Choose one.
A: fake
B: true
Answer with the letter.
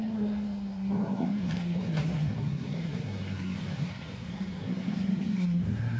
A